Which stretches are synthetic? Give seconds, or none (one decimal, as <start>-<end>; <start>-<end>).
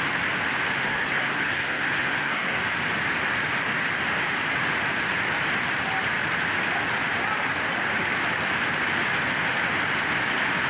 0.8-2.6